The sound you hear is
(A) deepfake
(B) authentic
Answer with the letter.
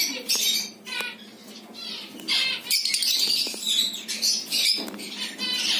A